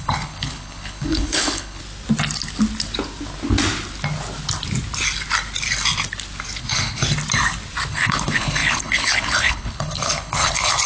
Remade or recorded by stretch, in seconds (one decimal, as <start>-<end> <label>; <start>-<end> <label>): 0.0-1.8 remade; 1.8-6.6 recorded; 6.6-7.0 remade; 7.0-7.9 recorded; 7.9-10.9 remade